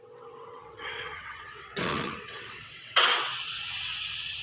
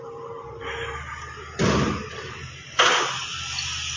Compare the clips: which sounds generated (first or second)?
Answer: first